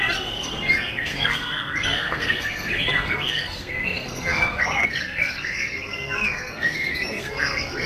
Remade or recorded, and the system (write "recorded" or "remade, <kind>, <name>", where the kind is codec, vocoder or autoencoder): remade, codec, SNAC